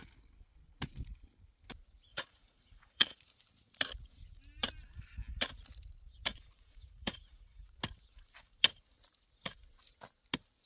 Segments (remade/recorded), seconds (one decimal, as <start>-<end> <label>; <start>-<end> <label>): 0.0-2.1 recorded; 2.1-3.4 remade; 3.4-6.3 recorded; 6.3-7.7 remade; 7.7-10.7 recorded